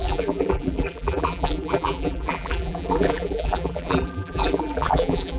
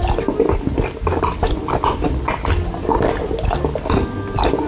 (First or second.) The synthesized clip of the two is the first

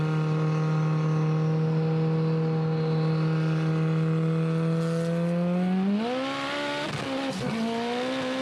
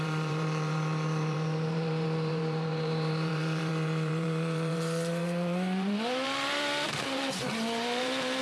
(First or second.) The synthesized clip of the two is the second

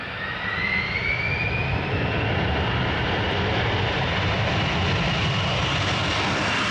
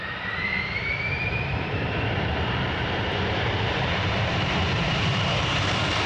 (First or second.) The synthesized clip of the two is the second